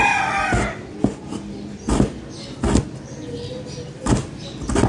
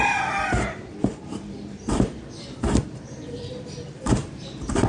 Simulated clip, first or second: second